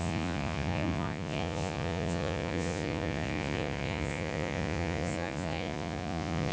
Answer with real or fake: fake